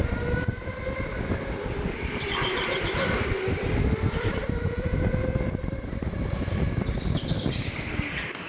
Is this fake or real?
real